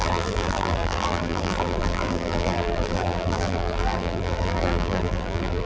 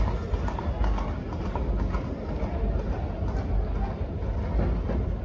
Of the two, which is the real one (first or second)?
second